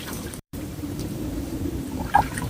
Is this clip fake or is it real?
fake